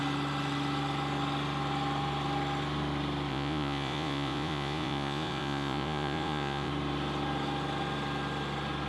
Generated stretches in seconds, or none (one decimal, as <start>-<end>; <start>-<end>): 3.3-6.7